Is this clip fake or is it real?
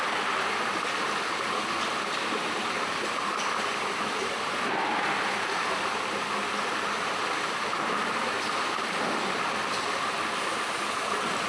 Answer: real